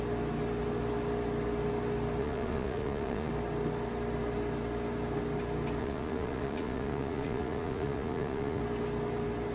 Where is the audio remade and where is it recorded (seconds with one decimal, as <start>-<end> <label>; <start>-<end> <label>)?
0.0-2.2 recorded; 2.2-3.3 remade; 3.3-5.8 recorded; 5.8-8.6 remade; 8.6-9.5 recorded